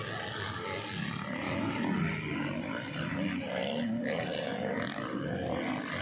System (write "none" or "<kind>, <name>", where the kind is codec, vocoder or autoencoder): none